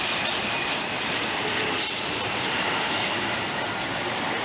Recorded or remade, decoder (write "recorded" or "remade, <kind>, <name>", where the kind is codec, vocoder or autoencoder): remade, vocoder, BigVGAN v2